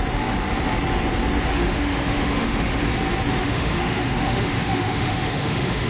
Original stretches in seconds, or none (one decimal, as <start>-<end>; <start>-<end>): 0.0-1.5; 2.8-3.4